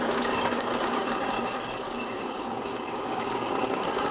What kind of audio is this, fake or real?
fake